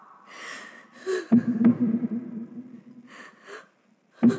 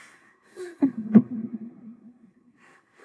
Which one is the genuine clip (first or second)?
first